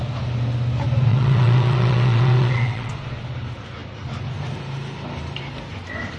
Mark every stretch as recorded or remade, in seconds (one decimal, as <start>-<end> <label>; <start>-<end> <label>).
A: 0.0-1.1 recorded; 1.1-2.9 remade; 2.9-6.2 recorded